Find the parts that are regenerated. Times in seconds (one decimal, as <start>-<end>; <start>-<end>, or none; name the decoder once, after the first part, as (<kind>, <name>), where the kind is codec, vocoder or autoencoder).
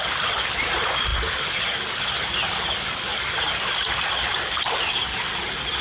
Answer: none